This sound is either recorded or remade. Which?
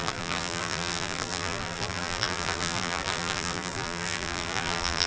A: remade